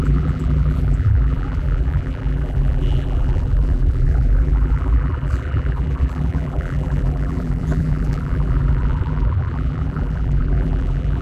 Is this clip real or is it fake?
fake